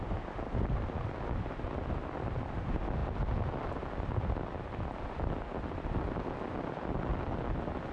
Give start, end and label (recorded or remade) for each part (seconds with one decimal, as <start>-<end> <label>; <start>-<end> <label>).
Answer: 0.0-7.9 recorded